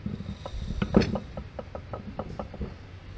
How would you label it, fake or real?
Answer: real